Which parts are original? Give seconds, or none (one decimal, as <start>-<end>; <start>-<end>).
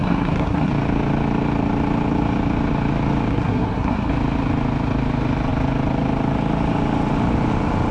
0.7-3.3; 4.1-7.9